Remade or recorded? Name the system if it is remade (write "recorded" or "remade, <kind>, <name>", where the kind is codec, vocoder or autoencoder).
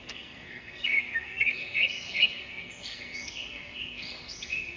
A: remade, codec, SNAC